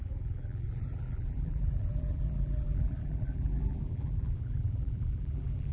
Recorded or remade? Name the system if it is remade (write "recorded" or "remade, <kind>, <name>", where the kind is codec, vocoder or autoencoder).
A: remade, vocoder, BigVGAN v2